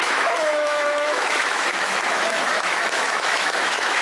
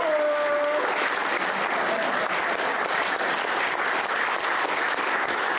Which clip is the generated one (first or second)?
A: first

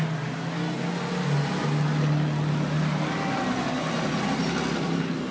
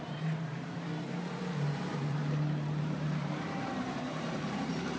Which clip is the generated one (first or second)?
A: second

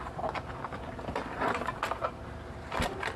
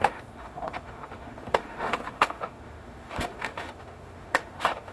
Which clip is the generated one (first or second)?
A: second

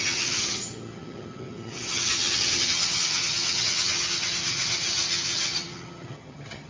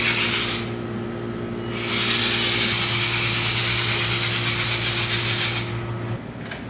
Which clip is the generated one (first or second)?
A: first